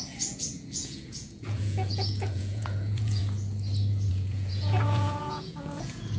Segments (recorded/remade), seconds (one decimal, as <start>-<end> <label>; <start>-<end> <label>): 0.0-3.2 remade; 3.2-4.1 recorded; 4.1-6.2 remade